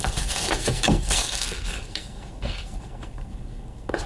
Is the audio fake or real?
fake